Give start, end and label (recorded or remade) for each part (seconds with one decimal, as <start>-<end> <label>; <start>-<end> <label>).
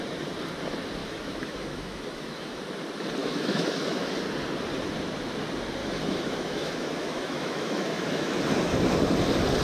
0.0-1.0 recorded; 1.0-2.6 remade; 2.6-3.2 recorded; 3.2-4.1 remade; 4.1-5.8 recorded; 5.8-8.3 remade; 8.3-9.6 recorded